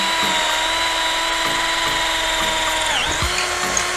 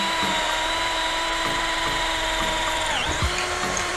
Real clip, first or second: first